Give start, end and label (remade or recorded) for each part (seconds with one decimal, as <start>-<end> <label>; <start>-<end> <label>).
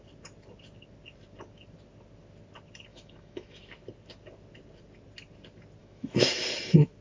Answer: 0.0-2.9 recorded; 2.9-3.6 remade; 3.6-5.8 recorded; 5.8-6.4 remade; 6.4-7.0 recorded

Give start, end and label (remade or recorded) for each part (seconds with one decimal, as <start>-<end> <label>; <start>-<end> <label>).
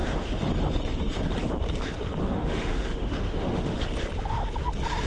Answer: 0.0-0.5 remade; 0.5-2.2 recorded; 2.2-3.8 remade; 3.8-5.1 recorded